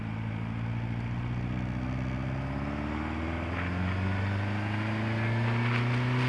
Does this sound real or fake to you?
real